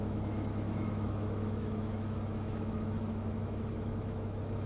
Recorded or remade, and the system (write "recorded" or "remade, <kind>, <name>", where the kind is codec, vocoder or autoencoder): remade, autoencoder, DAC-VAE